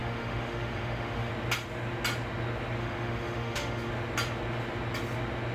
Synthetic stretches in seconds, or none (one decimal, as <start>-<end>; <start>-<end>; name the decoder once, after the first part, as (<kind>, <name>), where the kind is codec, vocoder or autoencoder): 0.0-1.3 (autoencoder, DAC-VAE); 2.8-3.9